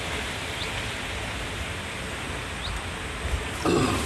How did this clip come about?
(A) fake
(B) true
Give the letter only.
B